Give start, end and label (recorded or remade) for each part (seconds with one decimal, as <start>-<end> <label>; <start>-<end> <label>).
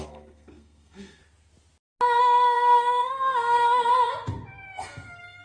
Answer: 0.0-1.2 remade; 1.2-2.2 recorded; 2.2-3.9 remade; 3.9-5.4 recorded